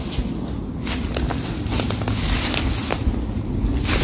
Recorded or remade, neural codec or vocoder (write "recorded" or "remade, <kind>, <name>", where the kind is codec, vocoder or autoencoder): recorded